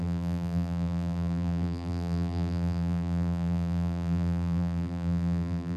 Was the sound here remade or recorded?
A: remade